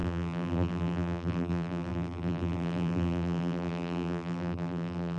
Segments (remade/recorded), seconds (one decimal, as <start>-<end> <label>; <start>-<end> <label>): 0.0-5.2 remade